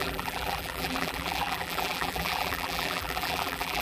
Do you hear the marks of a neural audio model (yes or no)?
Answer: yes